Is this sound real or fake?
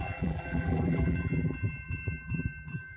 fake